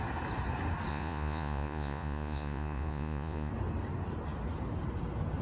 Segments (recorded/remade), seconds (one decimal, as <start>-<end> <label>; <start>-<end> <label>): 0.0-0.9 recorded; 0.9-3.5 remade; 3.5-5.4 recorded